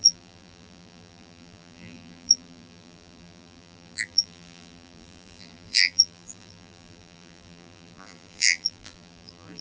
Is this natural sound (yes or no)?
no